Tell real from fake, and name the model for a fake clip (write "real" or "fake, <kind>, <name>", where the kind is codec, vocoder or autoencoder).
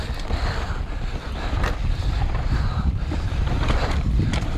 fake, vocoder, BigVGAN v2